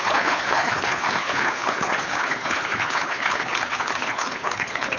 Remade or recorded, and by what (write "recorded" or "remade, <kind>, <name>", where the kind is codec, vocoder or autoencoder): remade, codec, HILCodec